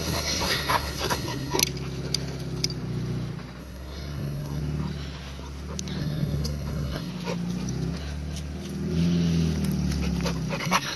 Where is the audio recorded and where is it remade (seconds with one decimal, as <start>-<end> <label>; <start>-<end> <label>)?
0.0-1.6 remade; 1.6-3.6 recorded; 3.6-4.6 remade; 4.6-6.0 recorded; 6.0-7.1 remade; 7.1-10.6 recorded; 10.6-11.0 remade